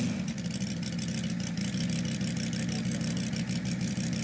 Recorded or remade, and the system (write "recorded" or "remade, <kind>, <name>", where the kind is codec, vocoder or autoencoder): recorded